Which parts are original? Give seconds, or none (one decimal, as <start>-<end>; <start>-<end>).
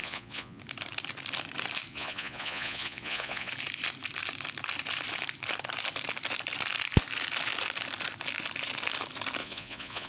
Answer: 0.6-1.9; 3.5-9.4